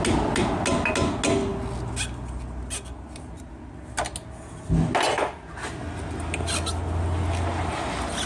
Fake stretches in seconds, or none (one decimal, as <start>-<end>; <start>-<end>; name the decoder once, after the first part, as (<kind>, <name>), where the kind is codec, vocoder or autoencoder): none